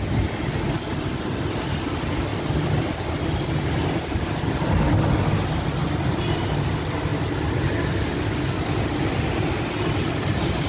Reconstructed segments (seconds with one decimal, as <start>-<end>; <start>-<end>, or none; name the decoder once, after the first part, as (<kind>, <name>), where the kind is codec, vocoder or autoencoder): none